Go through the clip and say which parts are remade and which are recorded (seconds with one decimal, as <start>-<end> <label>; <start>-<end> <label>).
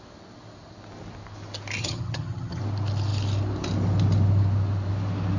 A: 0.0-1.8 recorded; 1.8-2.6 remade; 2.6-5.4 recorded